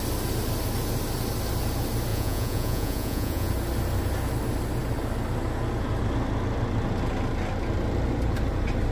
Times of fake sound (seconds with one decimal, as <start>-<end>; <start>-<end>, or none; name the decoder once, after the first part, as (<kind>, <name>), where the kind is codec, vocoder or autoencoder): 2.1-3.5 (vocoder, Vocos)